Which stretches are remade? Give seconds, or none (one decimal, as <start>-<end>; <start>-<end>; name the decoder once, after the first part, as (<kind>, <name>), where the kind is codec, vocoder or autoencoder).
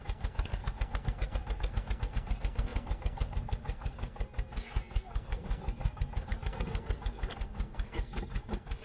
0.0-8.8 (codec, SNAC)